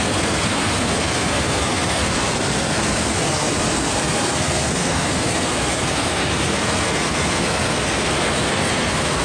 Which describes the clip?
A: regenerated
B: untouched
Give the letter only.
A